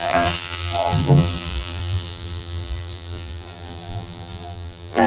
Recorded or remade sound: remade